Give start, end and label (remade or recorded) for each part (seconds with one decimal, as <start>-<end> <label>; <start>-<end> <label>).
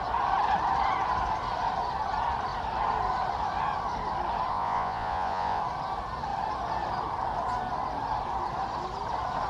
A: 0.0-4.5 recorded; 4.5-5.6 remade; 5.6-9.5 recorded